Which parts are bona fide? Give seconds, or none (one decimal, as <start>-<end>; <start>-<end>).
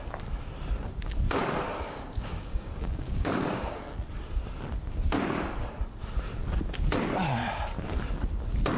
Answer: 0.0-1.7; 3.8-8.8